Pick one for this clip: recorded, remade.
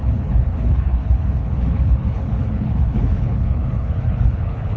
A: remade